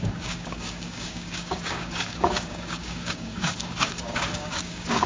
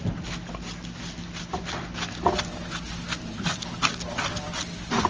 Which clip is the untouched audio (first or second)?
second